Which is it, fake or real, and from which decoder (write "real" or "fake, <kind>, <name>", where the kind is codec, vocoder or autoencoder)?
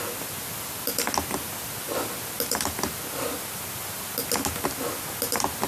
real